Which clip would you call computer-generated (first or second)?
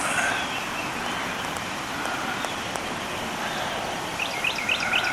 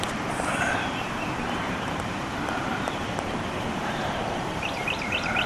second